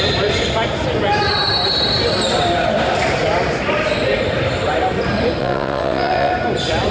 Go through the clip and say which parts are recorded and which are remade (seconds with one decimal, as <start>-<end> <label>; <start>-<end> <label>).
0.0-5.4 recorded; 5.4-6.3 remade; 6.3-6.9 recorded